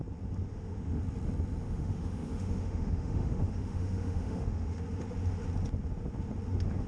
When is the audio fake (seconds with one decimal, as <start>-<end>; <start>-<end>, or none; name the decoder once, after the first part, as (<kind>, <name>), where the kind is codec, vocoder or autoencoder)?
0.5-1.0 (autoencoder, DAC-VAE); 1.6-4.8